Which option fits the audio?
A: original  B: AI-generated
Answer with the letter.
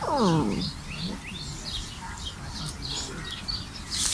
A